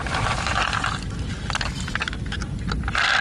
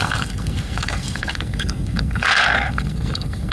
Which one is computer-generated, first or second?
second